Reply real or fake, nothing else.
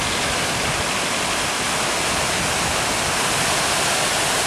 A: real